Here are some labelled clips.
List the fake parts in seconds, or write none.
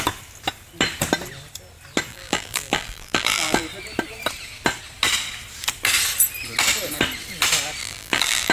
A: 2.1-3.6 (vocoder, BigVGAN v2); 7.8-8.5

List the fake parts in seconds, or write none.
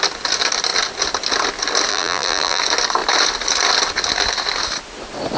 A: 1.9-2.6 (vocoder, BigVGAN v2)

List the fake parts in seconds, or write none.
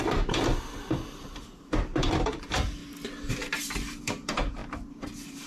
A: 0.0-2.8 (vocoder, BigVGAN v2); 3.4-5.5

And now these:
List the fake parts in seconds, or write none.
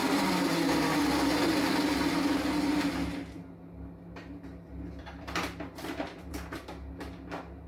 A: 0.0-1.0 (vocoder, BigVGAN v2); 4.5-6.3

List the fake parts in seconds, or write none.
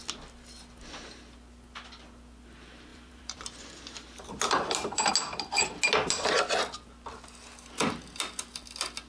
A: 2.9-5.1 (vocoder, BigVGAN v2)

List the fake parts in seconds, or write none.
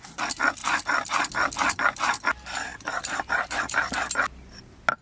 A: 2.7-3.9 (vocoder, BigVGAN v2)